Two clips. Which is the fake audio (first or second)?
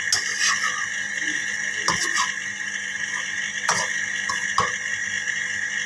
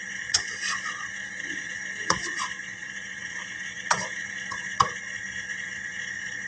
second